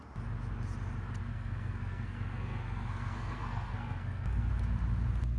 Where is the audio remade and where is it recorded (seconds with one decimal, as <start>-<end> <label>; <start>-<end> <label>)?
0.0-1.3 recorded; 1.3-4.5 remade; 4.5-5.4 recorded